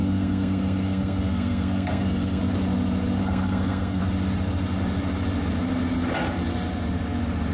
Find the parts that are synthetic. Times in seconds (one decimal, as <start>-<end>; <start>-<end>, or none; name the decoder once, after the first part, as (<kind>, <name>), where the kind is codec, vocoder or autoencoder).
0.0-2.4 (codec, SNAC); 3.2-4.0